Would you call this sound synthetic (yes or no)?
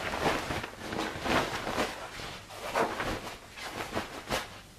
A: no